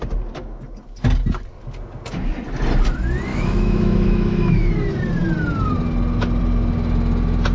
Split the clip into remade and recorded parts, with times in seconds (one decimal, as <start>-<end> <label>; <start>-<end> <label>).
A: 0.0-3.3 recorded; 3.3-4.7 remade; 4.7-7.5 recorded